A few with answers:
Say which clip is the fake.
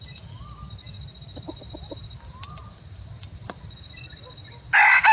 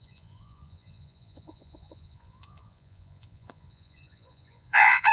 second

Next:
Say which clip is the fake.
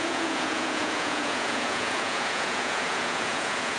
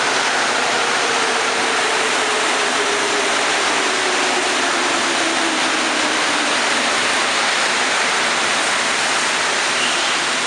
first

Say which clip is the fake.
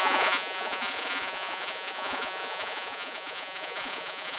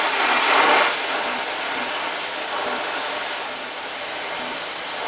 first